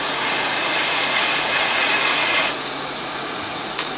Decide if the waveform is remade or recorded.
remade